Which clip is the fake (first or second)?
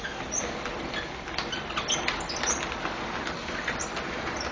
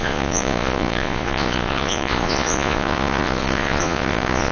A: second